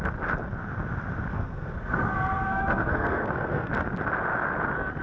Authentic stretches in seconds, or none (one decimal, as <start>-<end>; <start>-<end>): 0.0-1.3; 3.7-5.0